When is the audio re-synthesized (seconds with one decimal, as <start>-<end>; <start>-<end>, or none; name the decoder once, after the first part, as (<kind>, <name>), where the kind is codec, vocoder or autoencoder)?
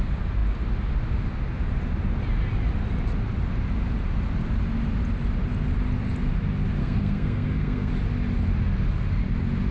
6.8-7.9 (codec, SNAC)